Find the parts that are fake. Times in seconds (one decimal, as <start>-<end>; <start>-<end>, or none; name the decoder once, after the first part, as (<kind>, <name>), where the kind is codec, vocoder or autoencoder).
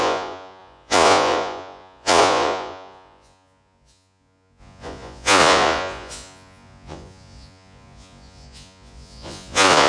0.0-9.9 (vocoder, Vocos)